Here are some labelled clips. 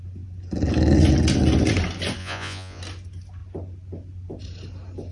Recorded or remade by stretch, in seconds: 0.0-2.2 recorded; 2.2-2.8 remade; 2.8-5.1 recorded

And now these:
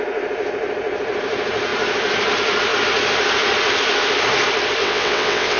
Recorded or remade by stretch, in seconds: 0.0-4.8 recorded; 4.8-5.6 remade

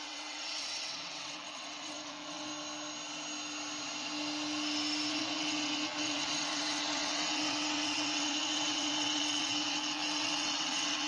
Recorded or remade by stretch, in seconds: 0.0-2.5 remade; 2.5-5.1 recorded; 5.1-11.1 remade

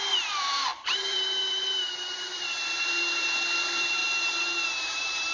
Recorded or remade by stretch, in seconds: 0.0-5.3 remade

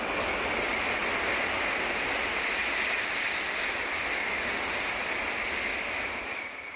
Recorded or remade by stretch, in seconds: 0.0-6.8 recorded

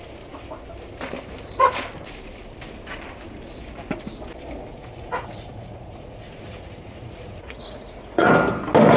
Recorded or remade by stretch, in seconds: 0.0-4.7 recorded; 4.7-8.3 remade; 8.3-9.0 recorded

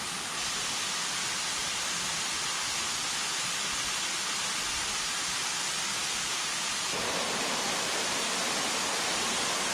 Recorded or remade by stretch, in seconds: 0.0-9.7 recorded

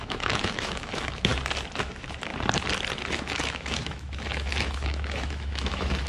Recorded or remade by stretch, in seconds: 0.0-1.3 remade; 1.3-1.8 recorded; 1.8-2.3 remade; 2.3-3.1 recorded; 3.1-6.1 remade